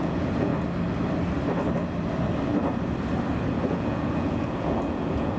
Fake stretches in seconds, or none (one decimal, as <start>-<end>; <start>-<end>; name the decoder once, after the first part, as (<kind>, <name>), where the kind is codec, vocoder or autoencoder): 0.0-0.5 (vocoder, Vocos); 3.7-5.4